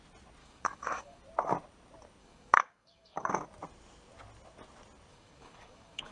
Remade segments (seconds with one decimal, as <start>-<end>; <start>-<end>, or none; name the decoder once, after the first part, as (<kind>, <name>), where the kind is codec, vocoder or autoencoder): 0.4-1.2 (codec, DAC); 2.2-3.3; 5.1-6.1